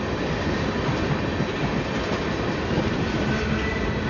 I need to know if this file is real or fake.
real